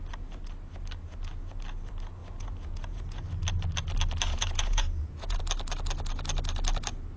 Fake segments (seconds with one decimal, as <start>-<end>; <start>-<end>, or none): 2.2-3.2; 4.3-5.4